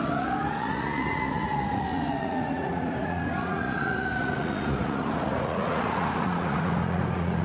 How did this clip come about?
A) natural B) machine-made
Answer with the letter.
B